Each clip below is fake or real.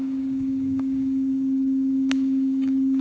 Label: fake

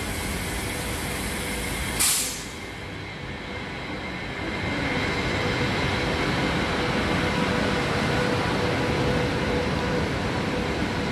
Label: real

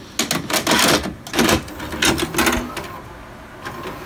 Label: real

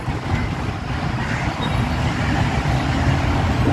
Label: real